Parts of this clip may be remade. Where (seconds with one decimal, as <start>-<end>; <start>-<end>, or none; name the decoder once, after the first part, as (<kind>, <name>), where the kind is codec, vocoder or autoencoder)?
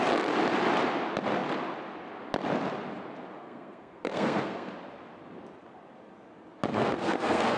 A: 3.4-4.7 (codec, SNAC); 6.7-7.6